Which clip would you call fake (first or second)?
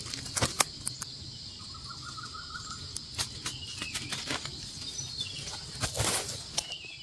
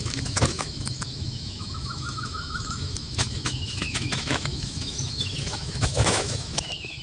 second